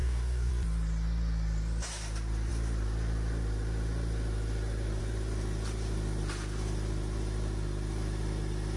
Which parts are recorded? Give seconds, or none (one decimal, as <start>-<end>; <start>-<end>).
0.5-8.8